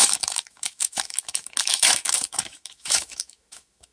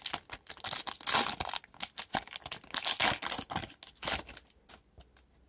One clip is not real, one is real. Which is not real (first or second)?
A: first